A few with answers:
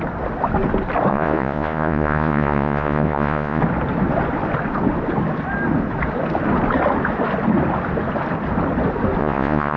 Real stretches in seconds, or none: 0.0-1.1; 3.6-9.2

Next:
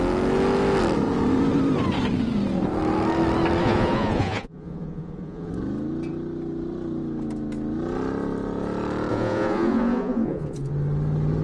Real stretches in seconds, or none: 0.0-3.6; 5.5-9.1; 10.7-11.4

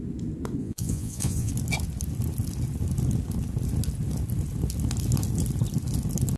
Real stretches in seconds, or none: 0.0-0.6; 1.5-6.4

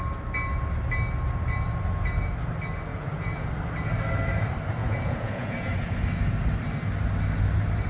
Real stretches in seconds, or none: 0.0-2.9; 3.5-4.8; 6.0-7.9

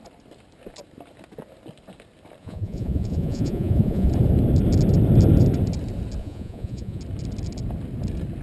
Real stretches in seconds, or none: 0.0-2.4; 4.1-6.2; 7.0-8.4

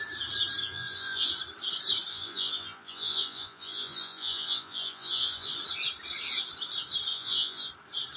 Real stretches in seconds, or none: 0.0-0.6; 1.3-2.1; 5.5-7.1; 7.7-8.2

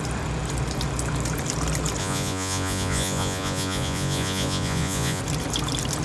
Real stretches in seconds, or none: 0.0-2.0; 5.2-6.0